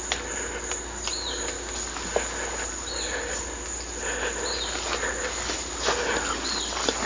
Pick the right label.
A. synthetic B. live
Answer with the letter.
B